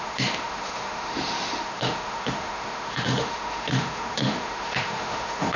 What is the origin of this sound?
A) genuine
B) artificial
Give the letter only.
B